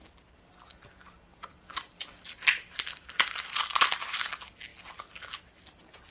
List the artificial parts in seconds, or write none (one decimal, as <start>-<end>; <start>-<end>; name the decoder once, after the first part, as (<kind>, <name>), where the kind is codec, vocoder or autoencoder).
1.3-4.3 (vocoder, BigVGAN v2)